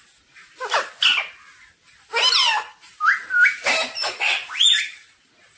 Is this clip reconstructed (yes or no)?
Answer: no